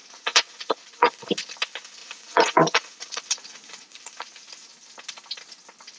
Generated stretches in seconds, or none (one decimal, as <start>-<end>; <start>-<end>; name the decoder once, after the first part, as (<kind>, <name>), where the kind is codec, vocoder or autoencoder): 0.0-1.3 (vocoder, Vocos); 2.0-4.7